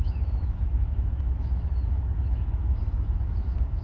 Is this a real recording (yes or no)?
no